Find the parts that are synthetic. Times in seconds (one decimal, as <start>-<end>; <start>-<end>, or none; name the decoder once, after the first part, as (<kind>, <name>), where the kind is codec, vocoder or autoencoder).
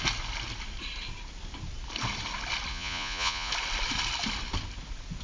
2.7-3.5 (vocoder, Vocos)